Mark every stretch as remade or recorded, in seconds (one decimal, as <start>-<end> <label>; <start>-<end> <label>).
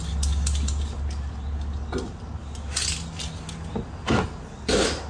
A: 0.0-5.1 recorded